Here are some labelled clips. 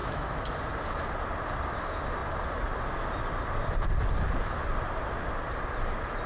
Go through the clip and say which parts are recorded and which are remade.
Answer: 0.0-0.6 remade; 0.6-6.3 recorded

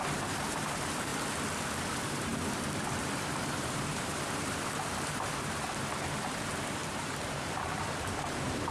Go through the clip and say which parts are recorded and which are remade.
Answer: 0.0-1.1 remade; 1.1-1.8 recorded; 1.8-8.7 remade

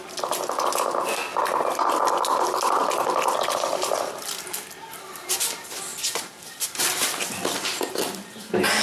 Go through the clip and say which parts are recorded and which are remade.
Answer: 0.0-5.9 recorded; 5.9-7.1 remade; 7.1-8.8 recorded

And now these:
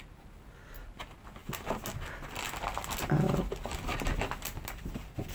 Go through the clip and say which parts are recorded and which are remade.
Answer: 0.0-5.3 recorded

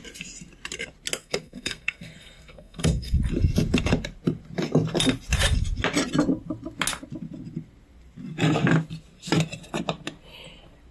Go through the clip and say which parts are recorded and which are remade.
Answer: 0.0-1.2 recorded; 1.2-3.2 remade; 3.2-10.9 recorded

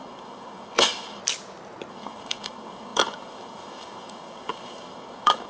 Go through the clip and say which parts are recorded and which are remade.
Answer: 0.0-1.2 remade; 1.2-1.9 recorded; 1.9-5.5 remade